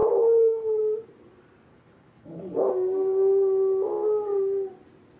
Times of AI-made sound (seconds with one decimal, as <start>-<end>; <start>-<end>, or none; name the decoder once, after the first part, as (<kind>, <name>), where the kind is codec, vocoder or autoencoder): 0.0-0.8 (codec, HILCodec); 1.7-2.7